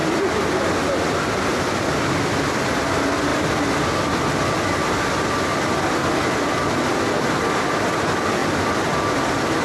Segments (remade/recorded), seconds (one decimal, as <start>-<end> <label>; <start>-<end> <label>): 0.0-9.6 recorded